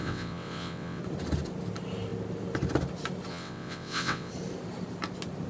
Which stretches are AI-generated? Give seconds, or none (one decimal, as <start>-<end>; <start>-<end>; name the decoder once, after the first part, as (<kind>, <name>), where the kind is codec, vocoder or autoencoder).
0.0-1.0 (vocoder, WaveNeXt); 3.3-4.3